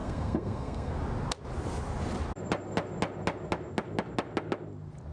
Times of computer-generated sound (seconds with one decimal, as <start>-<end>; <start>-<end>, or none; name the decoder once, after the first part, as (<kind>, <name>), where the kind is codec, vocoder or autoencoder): 0.0-0.9 (codec, SNAC)